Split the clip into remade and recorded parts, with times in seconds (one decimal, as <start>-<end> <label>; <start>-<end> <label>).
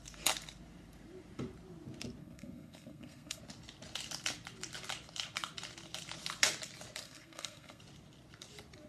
0.0-2.2 recorded; 2.2-3.4 remade; 3.4-7.0 recorded; 7.0-7.8 remade; 7.8-8.9 recorded